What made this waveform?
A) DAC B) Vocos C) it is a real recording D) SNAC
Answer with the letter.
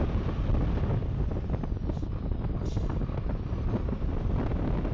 C